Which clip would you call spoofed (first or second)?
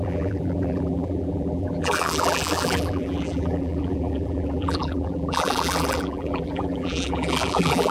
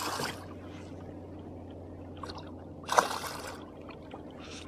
first